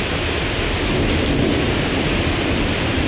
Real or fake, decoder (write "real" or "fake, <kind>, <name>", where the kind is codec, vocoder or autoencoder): real